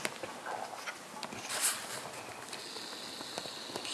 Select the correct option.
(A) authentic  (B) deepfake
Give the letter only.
A